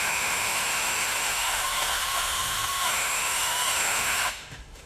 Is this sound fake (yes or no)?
yes